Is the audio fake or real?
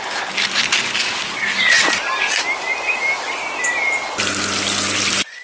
real